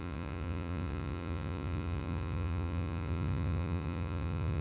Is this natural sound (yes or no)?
no